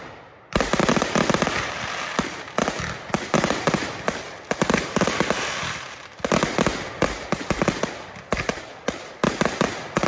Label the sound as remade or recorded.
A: recorded